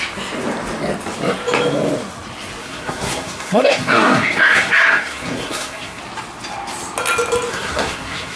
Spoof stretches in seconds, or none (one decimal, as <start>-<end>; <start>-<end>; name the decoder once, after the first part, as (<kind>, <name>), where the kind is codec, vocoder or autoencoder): 2.6-6.0 (codec, SNAC); 7.5-8.4